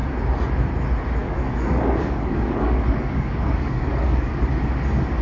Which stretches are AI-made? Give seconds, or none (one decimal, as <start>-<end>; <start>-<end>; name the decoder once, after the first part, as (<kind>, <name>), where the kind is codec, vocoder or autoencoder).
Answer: 1.2-4.3 (codec, DAC)

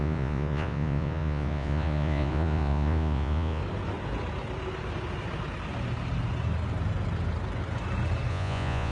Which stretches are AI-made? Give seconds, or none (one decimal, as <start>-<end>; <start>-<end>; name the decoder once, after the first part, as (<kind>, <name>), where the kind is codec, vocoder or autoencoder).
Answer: 0.0-3.6 (vocoder, Vocos); 8.3-8.9

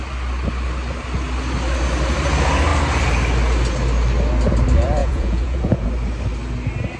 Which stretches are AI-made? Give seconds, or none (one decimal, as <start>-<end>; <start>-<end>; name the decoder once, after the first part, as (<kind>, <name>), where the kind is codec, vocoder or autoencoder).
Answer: 5.0-5.9 (vocoder, Vocos)